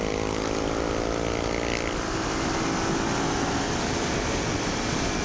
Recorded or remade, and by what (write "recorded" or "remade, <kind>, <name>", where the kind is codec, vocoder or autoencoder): recorded